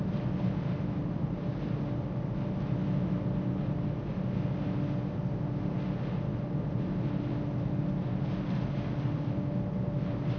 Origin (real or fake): real